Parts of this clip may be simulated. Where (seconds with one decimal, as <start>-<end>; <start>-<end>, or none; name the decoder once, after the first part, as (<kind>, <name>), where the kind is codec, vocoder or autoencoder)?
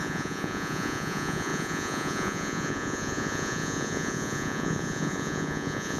0.0-6.0 (vocoder, Vocos)